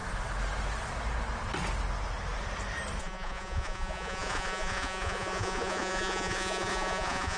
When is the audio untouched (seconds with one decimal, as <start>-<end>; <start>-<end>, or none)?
0.0-3.0

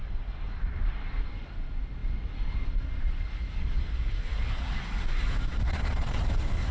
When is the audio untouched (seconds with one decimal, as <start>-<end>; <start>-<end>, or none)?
0.0-5.5; 6.2-6.7